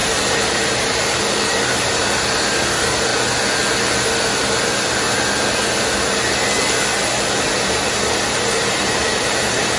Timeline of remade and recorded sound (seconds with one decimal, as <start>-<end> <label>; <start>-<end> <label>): 0.0-3.1 remade; 3.1-7.6 recorded; 7.6-9.8 remade